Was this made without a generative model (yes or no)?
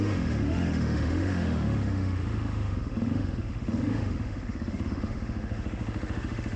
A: no